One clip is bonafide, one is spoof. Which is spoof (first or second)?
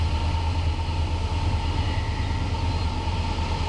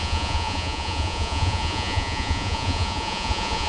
second